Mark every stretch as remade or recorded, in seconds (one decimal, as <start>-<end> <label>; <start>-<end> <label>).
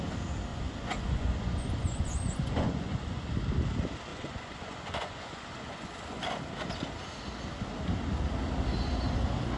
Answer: 0.0-0.5 recorded; 0.5-3.2 remade; 3.2-4.1 recorded; 4.1-6.4 remade; 6.4-9.6 recorded